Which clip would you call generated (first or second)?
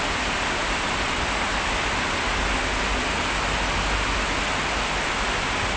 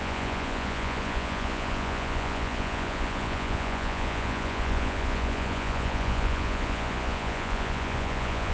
second